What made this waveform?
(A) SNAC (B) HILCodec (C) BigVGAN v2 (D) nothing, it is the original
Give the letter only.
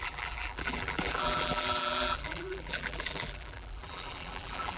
C